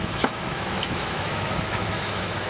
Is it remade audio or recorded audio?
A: remade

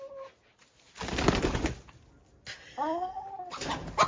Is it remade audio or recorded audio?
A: recorded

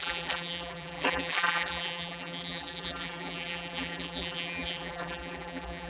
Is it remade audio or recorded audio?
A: remade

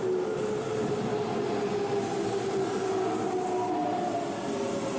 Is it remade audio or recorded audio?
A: recorded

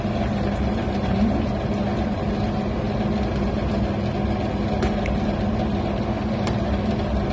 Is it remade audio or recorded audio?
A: recorded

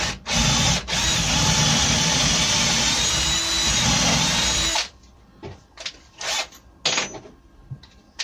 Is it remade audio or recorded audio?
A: recorded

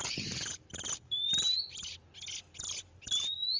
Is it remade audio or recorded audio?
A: recorded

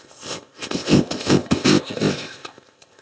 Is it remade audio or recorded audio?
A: remade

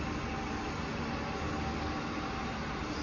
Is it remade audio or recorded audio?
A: recorded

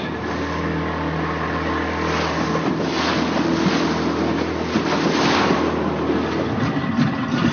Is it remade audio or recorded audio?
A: recorded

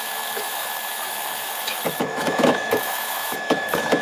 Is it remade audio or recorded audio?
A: remade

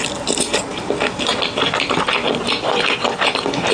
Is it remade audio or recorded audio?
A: recorded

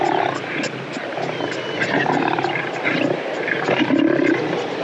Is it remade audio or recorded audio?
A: recorded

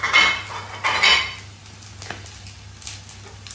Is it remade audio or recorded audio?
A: recorded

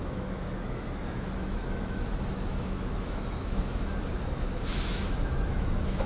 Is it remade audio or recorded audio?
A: remade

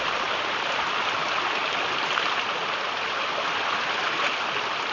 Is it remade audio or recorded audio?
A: recorded